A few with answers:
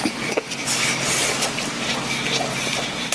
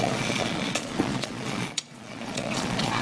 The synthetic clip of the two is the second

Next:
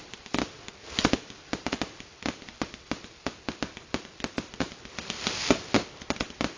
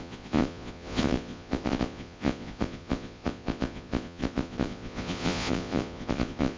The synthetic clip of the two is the second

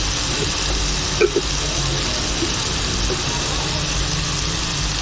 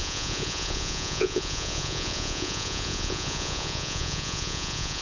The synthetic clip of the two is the second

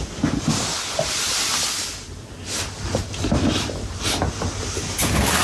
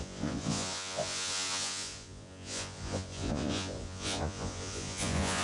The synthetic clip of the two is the second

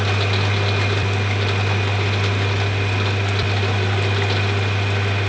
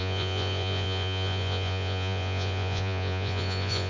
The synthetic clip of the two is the second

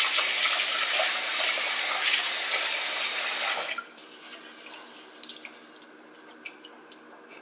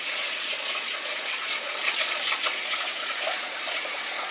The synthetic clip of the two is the second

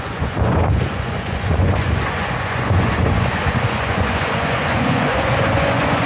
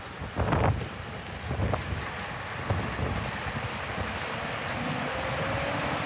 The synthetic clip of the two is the first